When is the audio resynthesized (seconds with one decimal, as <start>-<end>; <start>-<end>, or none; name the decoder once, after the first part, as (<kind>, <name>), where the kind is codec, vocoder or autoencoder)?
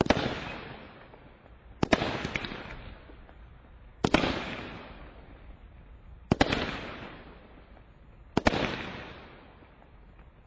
none